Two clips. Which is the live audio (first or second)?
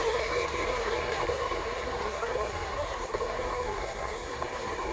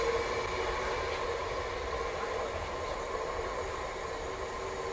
second